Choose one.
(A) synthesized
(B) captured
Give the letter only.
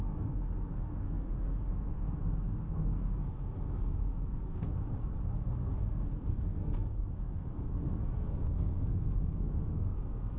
A